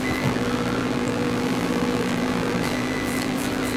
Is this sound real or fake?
fake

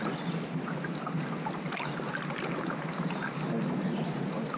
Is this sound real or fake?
real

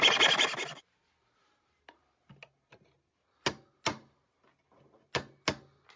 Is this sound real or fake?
real